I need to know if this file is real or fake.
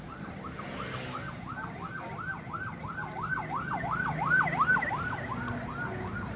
real